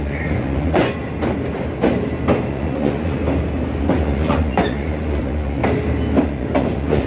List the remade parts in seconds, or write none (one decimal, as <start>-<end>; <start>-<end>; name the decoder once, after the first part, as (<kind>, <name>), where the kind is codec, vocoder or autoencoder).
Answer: 0.0-1.0 (vocoder, Vocos); 2.5-3.2; 3.8-5.6; 6.2-7.1